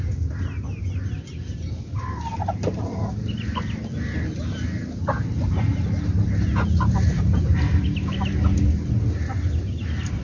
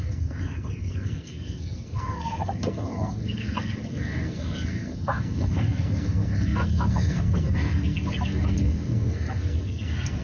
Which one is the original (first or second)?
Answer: first